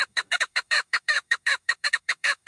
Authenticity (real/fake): fake